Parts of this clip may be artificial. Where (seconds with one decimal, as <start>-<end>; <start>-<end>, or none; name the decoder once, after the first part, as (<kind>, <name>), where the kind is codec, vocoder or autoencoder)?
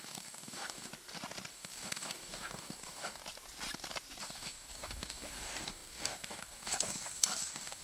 0.0-0.9 (codec, DAC); 1.5-3.2; 4.2-7.8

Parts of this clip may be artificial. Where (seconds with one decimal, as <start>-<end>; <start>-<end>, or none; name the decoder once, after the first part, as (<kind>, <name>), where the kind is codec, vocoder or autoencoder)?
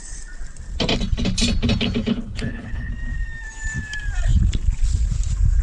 2.1-2.9 (codec, HILCodec)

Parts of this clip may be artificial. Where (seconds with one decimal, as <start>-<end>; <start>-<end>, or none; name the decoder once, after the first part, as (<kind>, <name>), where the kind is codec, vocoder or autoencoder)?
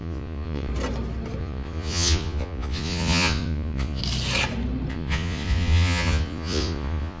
0.0-0.7 (vocoder, Vocos); 1.4-4.0; 4.9-7.2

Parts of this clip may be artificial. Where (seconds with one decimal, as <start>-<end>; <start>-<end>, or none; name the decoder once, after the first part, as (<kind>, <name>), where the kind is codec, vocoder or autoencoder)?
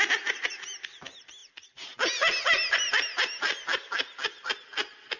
none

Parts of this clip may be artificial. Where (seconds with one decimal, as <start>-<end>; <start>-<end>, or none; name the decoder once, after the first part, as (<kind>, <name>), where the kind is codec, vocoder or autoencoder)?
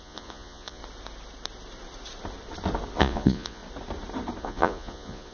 0.0-0.8 (vocoder, Vocos); 3.0-3.6; 4.4-5.3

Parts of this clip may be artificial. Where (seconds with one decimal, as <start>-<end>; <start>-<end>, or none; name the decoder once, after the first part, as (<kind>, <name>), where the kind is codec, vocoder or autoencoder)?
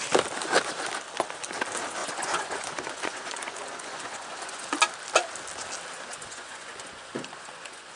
2.0-4.7 (vocoder, Vocos); 6.1-8.0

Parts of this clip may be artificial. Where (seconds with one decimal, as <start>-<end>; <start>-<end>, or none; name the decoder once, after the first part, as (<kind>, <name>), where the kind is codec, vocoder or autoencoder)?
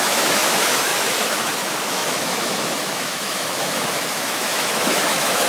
0.0-5.5 (autoencoder, DAC-VAE)